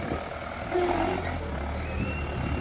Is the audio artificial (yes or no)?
no